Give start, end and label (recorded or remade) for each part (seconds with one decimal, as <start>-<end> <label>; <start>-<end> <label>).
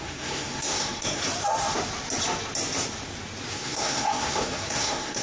0.0-1.2 remade; 1.2-3.5 recorded; 3.5-5.2 remade